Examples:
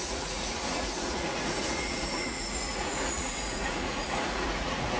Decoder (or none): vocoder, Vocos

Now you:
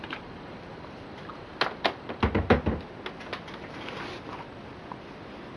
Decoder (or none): none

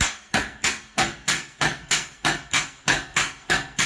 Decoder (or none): codec, SNAC